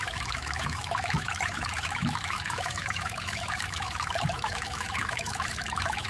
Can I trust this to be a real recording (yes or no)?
no